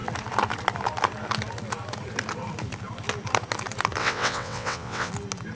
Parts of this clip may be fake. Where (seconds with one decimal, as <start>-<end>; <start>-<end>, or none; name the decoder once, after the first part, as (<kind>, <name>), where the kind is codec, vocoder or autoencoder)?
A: 4.0-5.1 (vocoder, WaveNeXt)